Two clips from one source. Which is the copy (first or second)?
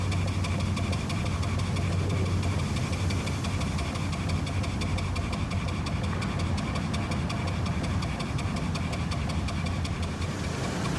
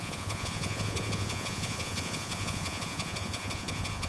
second